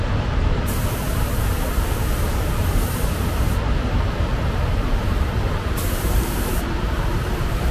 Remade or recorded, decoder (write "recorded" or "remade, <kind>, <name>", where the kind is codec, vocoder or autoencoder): remade, vocoder, BigVGAN v2